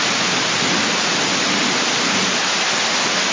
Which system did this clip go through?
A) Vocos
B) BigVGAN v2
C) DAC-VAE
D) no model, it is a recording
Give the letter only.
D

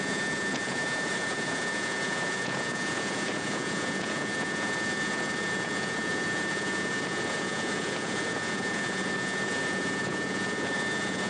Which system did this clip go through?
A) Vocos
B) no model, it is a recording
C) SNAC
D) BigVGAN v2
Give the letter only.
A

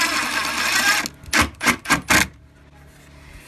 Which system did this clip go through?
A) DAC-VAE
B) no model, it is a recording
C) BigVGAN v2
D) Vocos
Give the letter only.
B